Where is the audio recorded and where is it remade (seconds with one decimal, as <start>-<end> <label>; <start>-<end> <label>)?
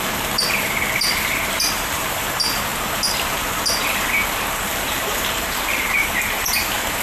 0.0-7.0 remade